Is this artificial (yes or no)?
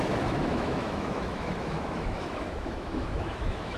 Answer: yes